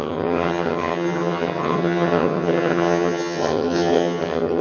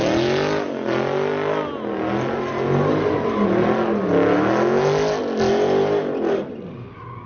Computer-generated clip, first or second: first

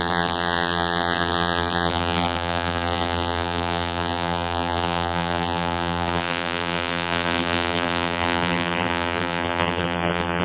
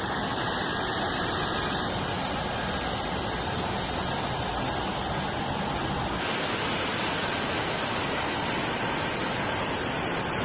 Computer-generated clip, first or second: first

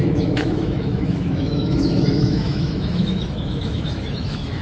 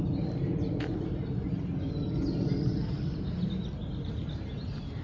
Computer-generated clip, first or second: first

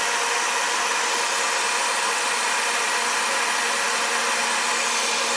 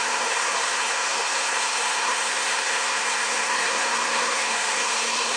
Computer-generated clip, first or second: second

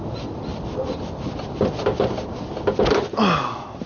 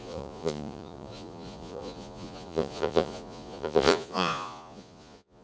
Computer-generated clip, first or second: second